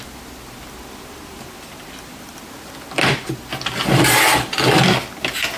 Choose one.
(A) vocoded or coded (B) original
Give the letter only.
B